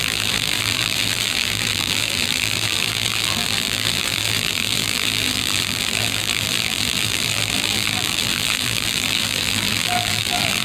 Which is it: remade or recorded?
remade